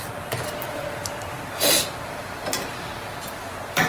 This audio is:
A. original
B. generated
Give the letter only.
A